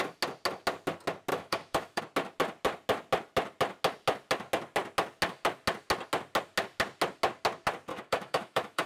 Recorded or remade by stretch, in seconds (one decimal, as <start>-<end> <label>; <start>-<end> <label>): 0.0-1.3 recorded; 1.3-2.0 remade; 2.0-7.9 recorded; 7.9-8.9 remade